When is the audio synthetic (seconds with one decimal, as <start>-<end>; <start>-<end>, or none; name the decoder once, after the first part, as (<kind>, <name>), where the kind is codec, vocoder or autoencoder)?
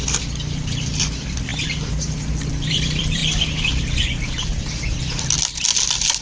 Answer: 0.0-1.5 (vocoder, BigVGAN v2); 2.7-3.2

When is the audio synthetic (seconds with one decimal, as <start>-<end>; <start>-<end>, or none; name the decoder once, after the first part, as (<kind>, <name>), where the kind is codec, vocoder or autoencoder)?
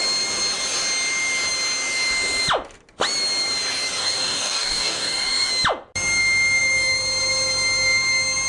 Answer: 4.0-5.5 (codec, DAC)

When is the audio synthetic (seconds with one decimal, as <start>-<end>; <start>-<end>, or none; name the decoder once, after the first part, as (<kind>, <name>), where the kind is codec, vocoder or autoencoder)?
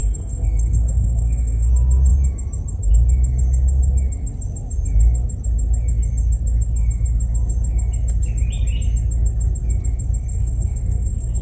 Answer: 0.0-1.7 (codec, SNAC); 10.3-11.4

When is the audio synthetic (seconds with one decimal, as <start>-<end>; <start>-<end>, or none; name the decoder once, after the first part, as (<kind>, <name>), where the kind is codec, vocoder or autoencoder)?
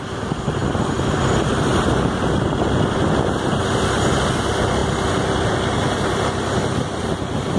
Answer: none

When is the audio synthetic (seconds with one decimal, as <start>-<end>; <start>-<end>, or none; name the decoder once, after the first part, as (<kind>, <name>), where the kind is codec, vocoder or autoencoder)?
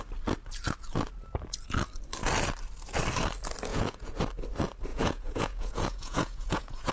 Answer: 3.7-4.2 (vocoder, Vocos); 4.9-6.9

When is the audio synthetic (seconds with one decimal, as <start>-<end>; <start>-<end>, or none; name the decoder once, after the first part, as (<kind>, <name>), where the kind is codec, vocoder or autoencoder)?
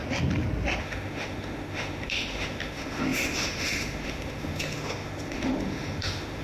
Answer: 0.8-6.4 (autoencoder, DAC-VAE)